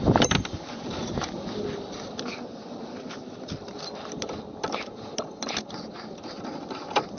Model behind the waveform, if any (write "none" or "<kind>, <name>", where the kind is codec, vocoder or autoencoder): none